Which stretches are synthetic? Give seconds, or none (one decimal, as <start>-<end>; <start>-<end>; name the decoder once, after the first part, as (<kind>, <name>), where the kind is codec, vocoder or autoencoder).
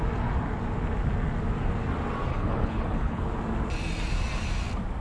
2.3-3.3 (codec, HILCodec)